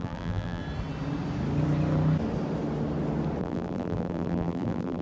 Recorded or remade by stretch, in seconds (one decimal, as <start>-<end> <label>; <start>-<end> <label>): 0.0-0.6 remade; 0.6-3.4 recorded; 3.4-5.0 remade